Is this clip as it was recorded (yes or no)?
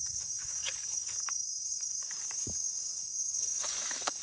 no